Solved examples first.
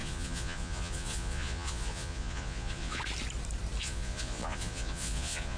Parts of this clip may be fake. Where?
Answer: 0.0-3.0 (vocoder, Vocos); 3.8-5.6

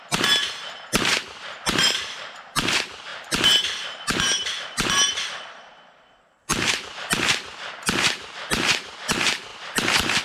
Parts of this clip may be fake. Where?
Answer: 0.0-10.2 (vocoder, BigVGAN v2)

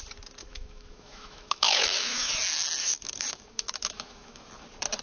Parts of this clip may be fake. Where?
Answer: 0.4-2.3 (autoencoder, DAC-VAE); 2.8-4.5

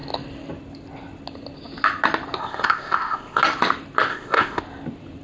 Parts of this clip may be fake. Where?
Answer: 2.4-3.4 (codec, ZipCodec); 4.1-4.6